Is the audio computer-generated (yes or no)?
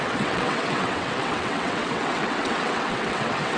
yes